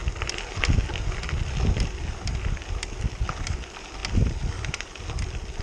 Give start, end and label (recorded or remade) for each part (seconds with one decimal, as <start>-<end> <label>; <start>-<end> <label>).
0.0-4.0 recorded; 4.0-5.6 remade

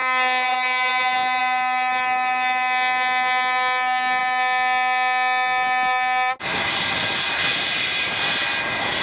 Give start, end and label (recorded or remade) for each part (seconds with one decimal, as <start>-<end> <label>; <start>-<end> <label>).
0.0-9.0 recorded